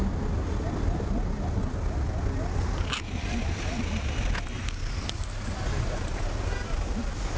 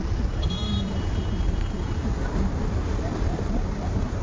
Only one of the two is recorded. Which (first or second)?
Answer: first